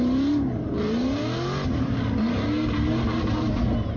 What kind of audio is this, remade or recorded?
recorded